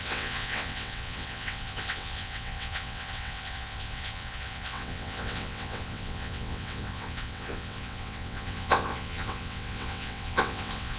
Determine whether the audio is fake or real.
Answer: fake